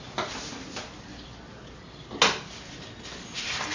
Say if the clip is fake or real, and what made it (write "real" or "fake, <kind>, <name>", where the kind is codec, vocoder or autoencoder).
real